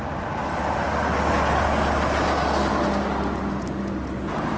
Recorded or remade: recorded